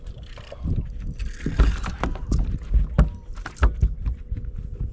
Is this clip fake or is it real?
real